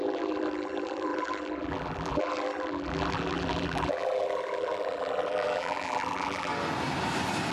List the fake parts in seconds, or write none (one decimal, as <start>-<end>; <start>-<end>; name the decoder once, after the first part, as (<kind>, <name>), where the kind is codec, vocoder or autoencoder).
0.0-6.5 (vocoder, BigVGAN v2)